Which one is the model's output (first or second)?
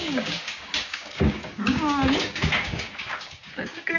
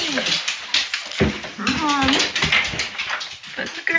first